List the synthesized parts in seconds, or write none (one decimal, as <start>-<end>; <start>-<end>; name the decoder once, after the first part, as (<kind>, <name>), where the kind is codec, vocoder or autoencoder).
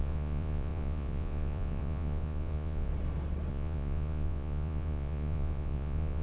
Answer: 0.0-2.9 (vocoder, Vocos); 3.5-6.2